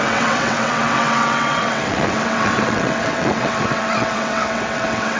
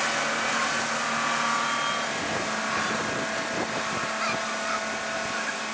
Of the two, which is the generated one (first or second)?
first